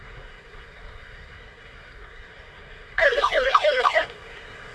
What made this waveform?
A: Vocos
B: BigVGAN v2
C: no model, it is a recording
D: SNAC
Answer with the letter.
D